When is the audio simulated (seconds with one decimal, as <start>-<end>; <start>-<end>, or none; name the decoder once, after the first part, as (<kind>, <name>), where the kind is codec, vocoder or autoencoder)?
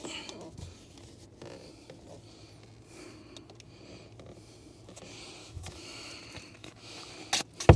5.4-6.1 (autoencoder, DAC-VAE); 6.6-7.1